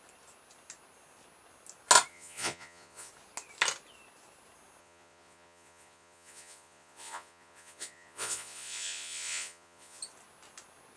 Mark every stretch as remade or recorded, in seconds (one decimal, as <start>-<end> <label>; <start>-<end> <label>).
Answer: 0.0-2.1 recorded; 2.1-3.1 remade; 3.1-4.8 recorded; 4.8-10.0 remade; 10.0-11.0 recorded